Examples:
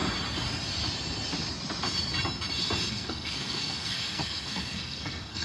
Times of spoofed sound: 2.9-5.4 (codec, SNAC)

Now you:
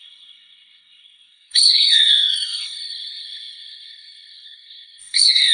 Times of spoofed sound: 0.0-5.5 (codec, SNAC)

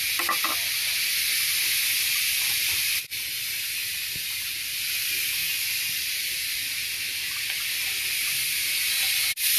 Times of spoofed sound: none

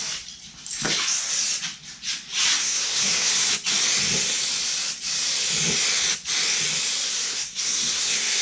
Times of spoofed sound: 2.6-3.5 (codec, SNAC); 7.1-8.4

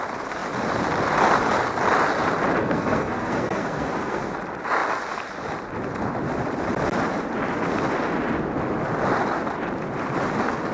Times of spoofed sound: 2.6-4.3 (codec, SNAC)

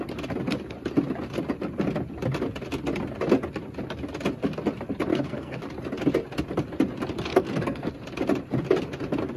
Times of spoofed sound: 5.1-5.6 (codec, SNAC); 7.3-7.9